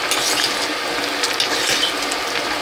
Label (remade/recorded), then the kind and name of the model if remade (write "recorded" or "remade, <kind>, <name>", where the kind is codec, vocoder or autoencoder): recorded